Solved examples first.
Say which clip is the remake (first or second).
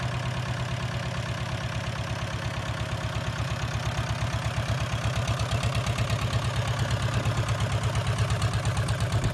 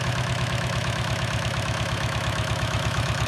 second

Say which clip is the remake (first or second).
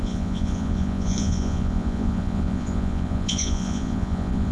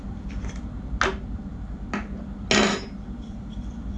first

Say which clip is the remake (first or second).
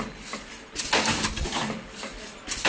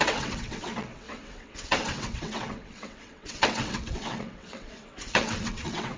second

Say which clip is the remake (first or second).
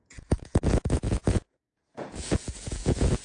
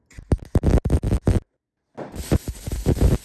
first